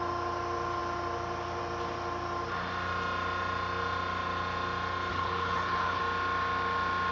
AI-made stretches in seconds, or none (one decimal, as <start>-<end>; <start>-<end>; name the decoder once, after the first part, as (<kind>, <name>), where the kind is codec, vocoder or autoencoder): 5.1-6.0 (codec, HILCodec)